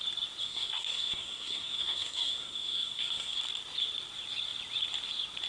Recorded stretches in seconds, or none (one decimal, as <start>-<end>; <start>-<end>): 0.0-0.4; 3.4-5.5